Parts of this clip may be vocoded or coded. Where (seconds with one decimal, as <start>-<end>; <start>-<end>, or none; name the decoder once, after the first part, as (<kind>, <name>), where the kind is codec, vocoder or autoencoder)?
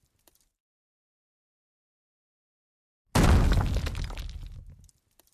none